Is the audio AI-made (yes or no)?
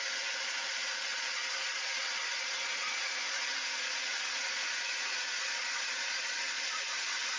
yes